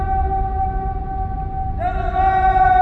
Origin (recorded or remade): recorded